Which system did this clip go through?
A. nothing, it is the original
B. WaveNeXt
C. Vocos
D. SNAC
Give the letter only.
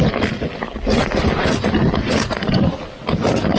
A